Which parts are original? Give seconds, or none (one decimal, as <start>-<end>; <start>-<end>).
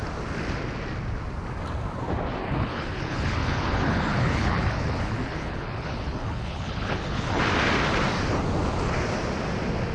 0.0-2.4; 7.4-9.9